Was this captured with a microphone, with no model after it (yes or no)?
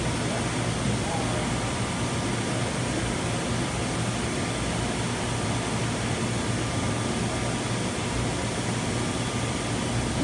yes